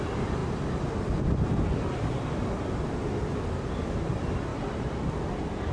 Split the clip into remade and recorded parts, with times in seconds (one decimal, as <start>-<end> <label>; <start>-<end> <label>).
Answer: 0.0-5.7 recorded